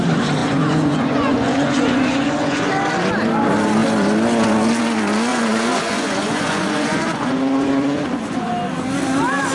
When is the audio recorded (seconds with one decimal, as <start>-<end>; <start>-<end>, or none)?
0.0-0.4; 2.7-5.3; 8.5-9.5